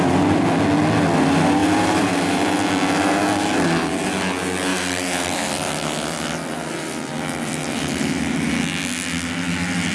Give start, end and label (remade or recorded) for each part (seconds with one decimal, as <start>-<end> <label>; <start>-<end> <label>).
0.0-1.6 recorded; 1.6-2.7 remade; 2.7-4.7 recorded; 4.7-8.5 remade; 8.5-9.9 recorded